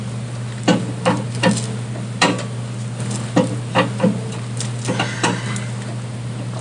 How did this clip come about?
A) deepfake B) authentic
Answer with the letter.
B